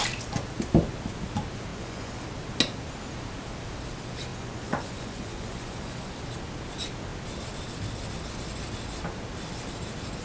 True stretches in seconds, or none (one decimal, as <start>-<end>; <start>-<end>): 0.0-1.7; 2.2-4.3; 6.1-10.2